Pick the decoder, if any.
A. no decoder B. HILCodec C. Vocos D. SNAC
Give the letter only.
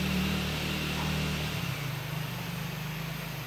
A